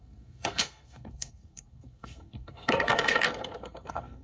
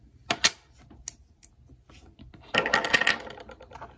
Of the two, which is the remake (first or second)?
first